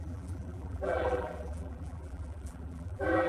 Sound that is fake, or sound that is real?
fake